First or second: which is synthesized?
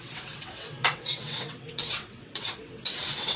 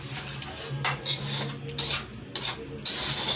first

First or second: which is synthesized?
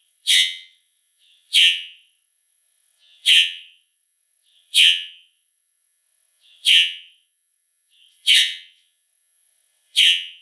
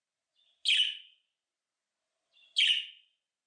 first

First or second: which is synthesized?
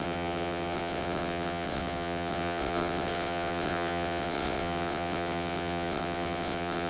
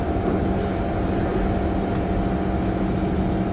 first